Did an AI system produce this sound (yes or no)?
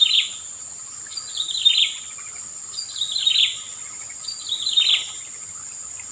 no